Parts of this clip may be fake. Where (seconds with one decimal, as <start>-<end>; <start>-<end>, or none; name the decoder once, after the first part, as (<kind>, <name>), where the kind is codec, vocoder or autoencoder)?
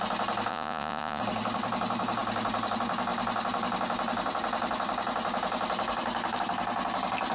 0.5-1.2 (vocoder, Vocos)